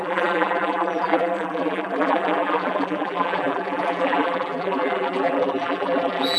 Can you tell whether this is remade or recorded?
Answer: remade